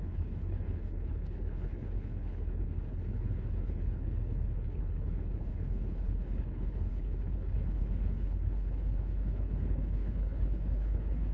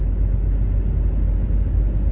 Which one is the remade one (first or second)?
first